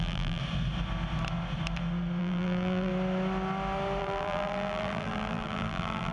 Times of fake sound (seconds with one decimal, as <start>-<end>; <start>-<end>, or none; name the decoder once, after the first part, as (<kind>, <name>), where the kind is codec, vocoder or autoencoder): 0.0-0.4 (vocoder, BigVGAN v2); 2.2-2.9; 4.0-6.1